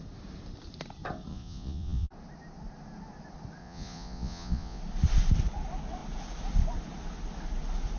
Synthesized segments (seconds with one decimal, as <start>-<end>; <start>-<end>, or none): 1.3-2.1; 3.6-4.8